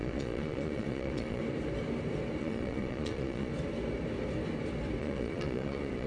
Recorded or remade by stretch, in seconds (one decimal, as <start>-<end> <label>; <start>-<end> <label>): 0.0-1.4 remade; 1.4-2.4 recorded; 2.4-3.5 remade; 3.5-5.0 recorded; 5.0-6.1 remade

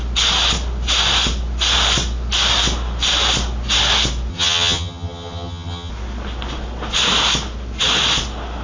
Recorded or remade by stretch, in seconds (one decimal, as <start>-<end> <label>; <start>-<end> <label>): 0.0-4.3 recorded; 4.3-5.9 remade; 5.9-8.6 recorded